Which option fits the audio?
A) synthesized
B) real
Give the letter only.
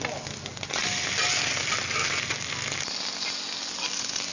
B